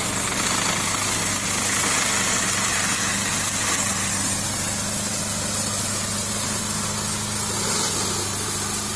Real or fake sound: real